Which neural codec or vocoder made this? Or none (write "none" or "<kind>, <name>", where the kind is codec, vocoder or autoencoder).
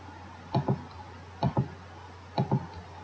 none